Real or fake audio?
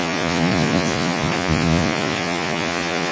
fake